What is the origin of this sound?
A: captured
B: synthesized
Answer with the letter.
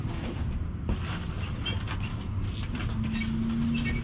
A